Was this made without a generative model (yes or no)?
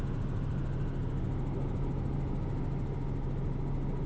yes